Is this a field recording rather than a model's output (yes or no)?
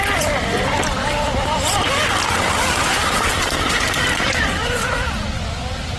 yes